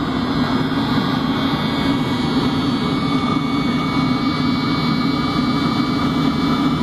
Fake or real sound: real